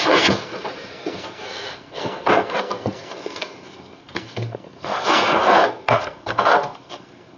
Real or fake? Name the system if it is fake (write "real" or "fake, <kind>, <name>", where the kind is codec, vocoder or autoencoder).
fake, codec, SNAC